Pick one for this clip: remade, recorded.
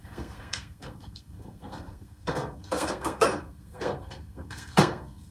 remade